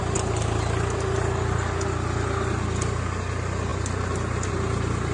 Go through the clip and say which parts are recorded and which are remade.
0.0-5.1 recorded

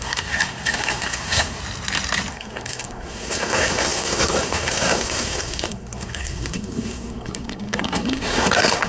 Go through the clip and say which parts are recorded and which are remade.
0.0-1.6 remade; 1.6-2.3 recorded; 2.3-8.9 remade

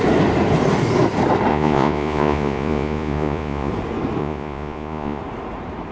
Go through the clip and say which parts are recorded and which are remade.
0.0-1.5 recorded; 1.5-3.7 remade; 3.7-4.2 recorded; 4.2-5.2 remade; 5.2-5.9 recorded